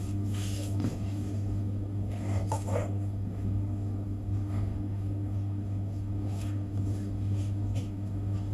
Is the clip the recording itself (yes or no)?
no